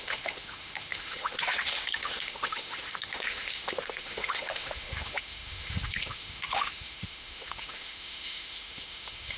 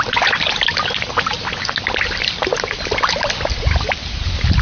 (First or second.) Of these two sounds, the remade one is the first